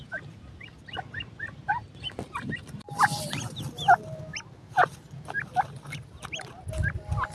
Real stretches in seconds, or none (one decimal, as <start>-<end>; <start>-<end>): 0.0-7.3